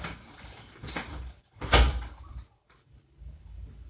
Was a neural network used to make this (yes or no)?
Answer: yes